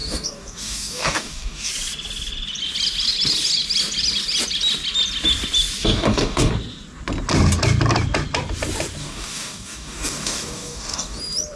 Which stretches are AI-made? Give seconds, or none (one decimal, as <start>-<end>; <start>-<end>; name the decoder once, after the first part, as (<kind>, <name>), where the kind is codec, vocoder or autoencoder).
0.0-1.7 (codec, DAC); 5.8-6.5; 9.0-11.2